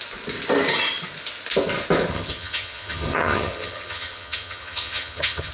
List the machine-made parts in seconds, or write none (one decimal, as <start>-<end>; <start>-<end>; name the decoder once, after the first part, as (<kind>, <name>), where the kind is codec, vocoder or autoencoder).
2.1-5.5 (vocoder, HiFi-GAN)